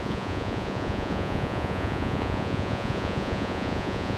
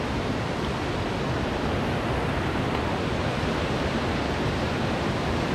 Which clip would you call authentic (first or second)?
second